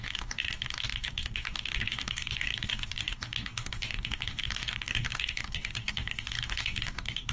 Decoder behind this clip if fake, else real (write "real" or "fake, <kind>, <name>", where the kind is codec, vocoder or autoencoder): fake, codec, DAC